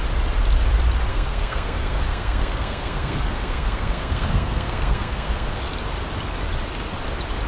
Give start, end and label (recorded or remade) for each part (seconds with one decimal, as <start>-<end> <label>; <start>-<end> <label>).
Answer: 0.0-1.1 recorded; 1.1-5.6 remade; 5.6-7.5 recorded